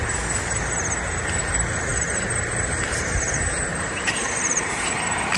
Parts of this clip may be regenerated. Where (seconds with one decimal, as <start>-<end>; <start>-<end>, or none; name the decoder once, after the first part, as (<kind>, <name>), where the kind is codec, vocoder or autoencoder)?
1.9-3.0 (vocoder, BigVGAN v2); 3.7-4.9